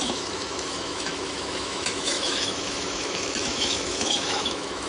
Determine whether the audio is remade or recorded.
remade